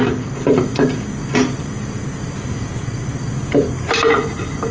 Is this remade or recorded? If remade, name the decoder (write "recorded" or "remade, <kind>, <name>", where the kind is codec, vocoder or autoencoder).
recorded